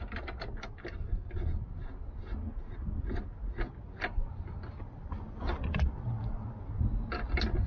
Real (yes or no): yes